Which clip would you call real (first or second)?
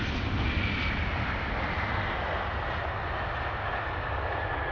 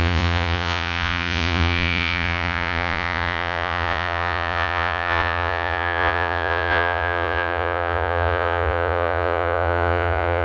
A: first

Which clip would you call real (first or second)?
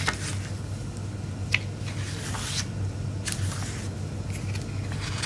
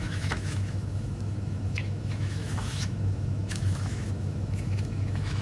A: first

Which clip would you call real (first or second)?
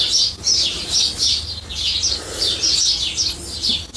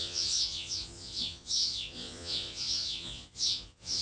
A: first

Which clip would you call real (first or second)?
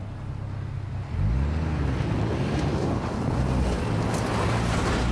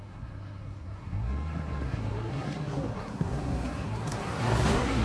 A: first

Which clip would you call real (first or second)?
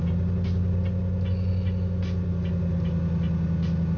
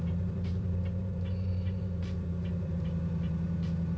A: first